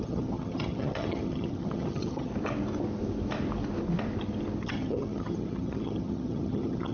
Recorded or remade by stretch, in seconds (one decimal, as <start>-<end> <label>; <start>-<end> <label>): 0.0-2.3 remade; 2.3-4.6 recorded; 4.6-6.9 remade